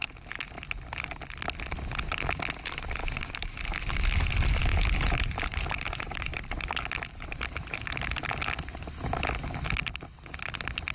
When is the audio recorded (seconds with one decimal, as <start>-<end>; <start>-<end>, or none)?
0.0-3.0; 3.6-4.7; 7.9-10.9